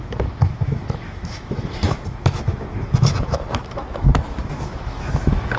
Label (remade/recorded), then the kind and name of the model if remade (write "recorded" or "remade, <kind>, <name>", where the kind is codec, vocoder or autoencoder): remade, autoencoder, DAC-VAE